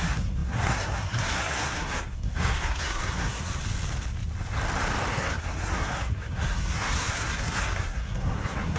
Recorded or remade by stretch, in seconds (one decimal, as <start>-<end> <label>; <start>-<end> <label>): 0.0-3.6 remade; 3.6-5.1 recorded; 5.1-8.8 remade